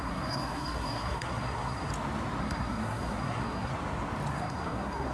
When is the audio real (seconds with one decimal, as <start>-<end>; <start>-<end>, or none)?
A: 1.9-2.4; 3.7-4.3